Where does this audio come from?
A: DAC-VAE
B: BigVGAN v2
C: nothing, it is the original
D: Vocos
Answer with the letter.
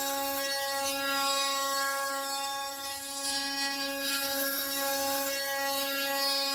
A